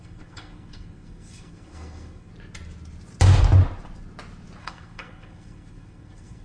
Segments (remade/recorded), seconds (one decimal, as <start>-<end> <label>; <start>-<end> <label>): 0.0-2.3 remade; 2.3-4.6 recorded; 4.6-6.4 remade